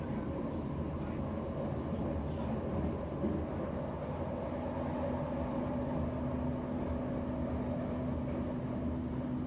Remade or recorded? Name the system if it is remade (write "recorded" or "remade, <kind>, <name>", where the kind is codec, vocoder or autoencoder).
recorded